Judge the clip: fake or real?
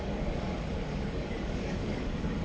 fake